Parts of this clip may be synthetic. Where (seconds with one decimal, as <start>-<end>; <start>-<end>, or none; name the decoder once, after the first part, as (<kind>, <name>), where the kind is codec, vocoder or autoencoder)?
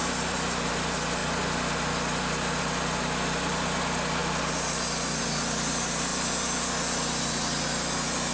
none